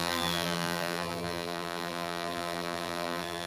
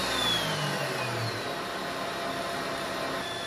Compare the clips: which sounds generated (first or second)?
first